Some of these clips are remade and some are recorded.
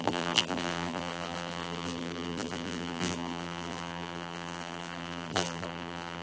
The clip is remade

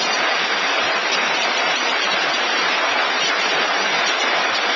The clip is remade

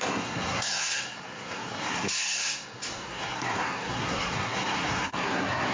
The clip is remade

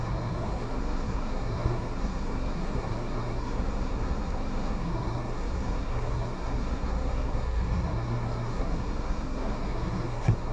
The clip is remade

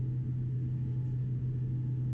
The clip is recorded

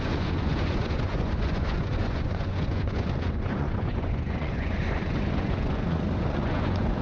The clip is remade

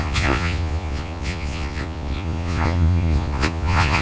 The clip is remade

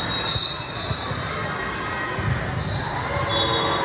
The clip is recorded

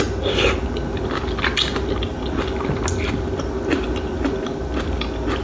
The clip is recorded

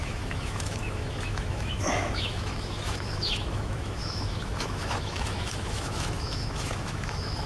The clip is remade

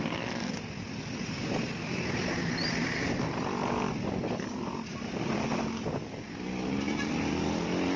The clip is recorded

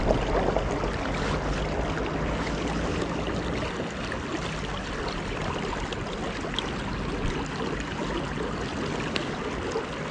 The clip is recorded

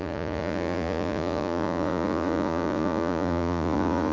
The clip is remade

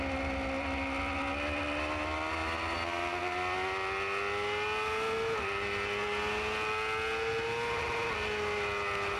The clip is recorded